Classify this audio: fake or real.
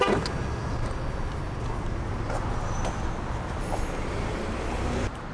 real